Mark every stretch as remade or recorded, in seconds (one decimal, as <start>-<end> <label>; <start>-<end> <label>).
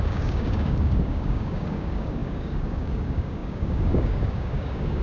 0.0-5.0 remade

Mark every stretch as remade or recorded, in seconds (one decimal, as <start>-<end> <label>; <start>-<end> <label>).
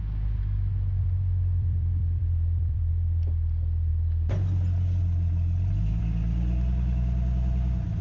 0.0-1.0 recorded; 1.0-2.9 remade; 2.9-8.0 recorded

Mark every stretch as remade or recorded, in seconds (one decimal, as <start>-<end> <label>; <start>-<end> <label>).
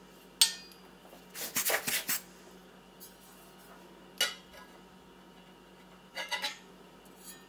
0.0-6.1 recorded; 6.1-6.7 remade; 6.7-7.5 recorded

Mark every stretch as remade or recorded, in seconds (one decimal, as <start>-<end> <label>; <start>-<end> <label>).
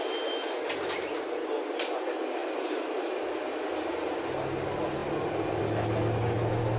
0.0-6.8 recorded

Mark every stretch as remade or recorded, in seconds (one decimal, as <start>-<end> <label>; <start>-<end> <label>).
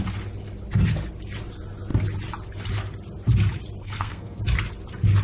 0.0-3.8 recorded; 3.8-4.4 remade; 4.4-5.2 recorded